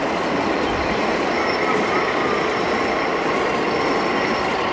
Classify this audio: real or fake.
real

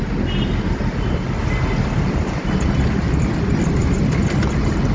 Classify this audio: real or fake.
real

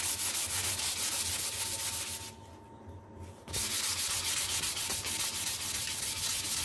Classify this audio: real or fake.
real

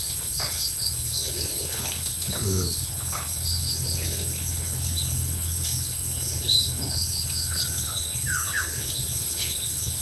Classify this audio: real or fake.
fake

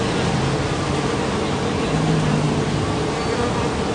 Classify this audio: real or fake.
real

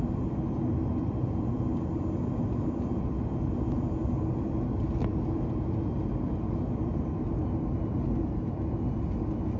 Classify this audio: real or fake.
real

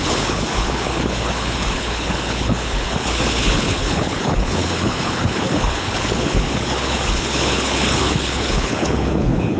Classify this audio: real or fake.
fake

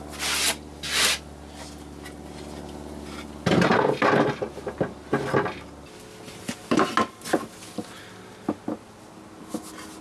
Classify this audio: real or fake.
real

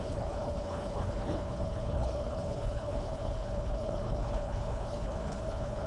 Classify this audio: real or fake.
fake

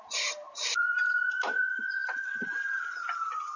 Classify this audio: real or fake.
real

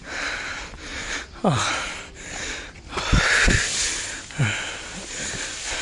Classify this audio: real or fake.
real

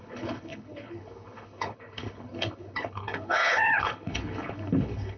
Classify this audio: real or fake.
fake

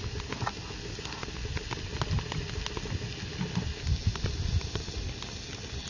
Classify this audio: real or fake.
real